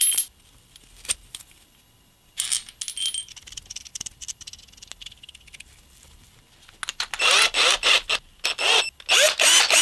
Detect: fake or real real